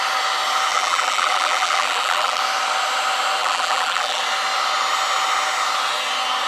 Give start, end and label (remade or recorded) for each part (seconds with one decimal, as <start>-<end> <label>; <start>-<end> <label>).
0.0-0.7 recorded; 0.7-2.4 remade; 2.4-3.4 recorded; 3.4-4.2 remade; 4.2-6.5 recorded